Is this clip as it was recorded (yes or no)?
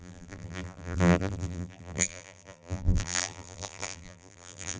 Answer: no